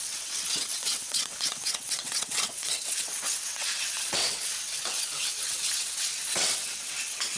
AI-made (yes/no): yes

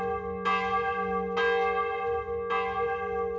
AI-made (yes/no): no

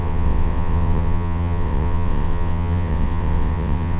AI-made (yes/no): yes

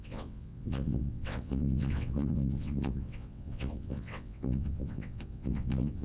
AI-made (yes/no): yes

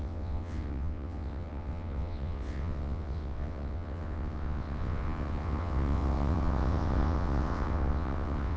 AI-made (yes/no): yes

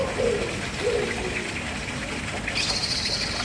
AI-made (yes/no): no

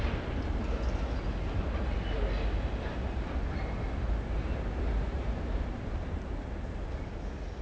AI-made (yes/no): no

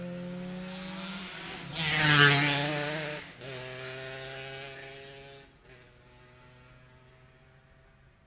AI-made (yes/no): no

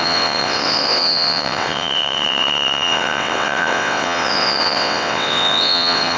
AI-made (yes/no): yes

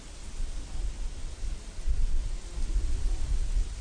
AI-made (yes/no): no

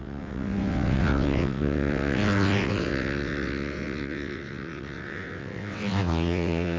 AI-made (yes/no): yes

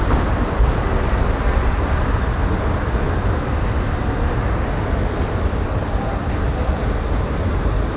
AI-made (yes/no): no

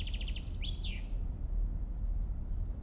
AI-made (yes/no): no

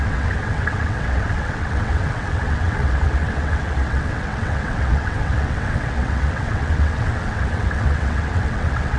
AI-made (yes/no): yes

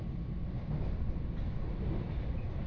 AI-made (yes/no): no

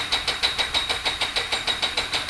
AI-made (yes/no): no